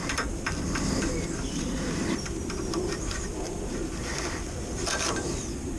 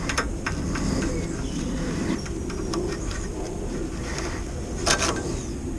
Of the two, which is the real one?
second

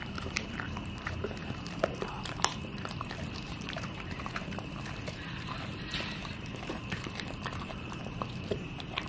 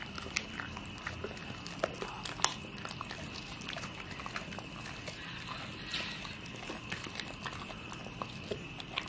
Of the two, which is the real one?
second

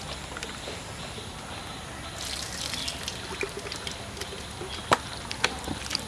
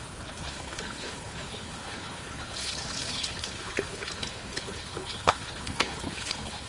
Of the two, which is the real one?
first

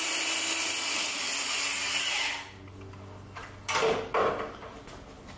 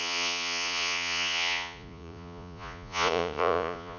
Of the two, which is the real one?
first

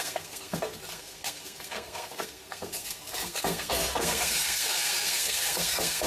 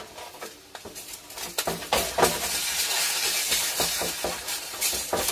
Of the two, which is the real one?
second